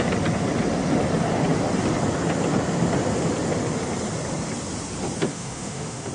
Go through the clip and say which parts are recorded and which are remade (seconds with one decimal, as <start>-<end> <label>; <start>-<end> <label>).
0.0-5.3 recorded; 5.3-6.1 remade